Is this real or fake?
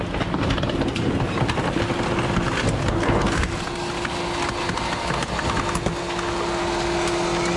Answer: real